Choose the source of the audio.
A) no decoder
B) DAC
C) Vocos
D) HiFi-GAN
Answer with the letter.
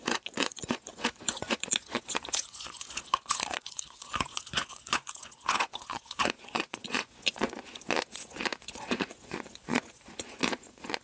C